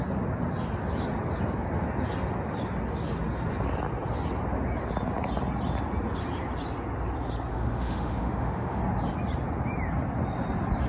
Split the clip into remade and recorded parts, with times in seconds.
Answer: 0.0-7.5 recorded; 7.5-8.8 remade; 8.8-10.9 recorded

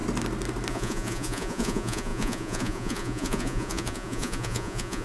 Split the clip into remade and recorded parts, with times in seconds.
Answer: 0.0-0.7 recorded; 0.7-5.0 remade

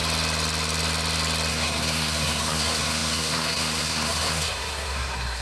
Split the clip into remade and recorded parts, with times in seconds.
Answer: 0.0-1.5 recorded; 1.5-5.4 remade

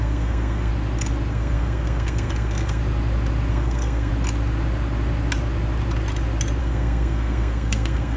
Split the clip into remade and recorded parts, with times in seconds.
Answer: 0.0-0.7 remade; 0.7-1.3 recorded; 1.3-2.8 remade; 2.8-3.5 recorded; 3.5-4.1 remade; 4.1-6.6 recorded; 6.6-8.2 remade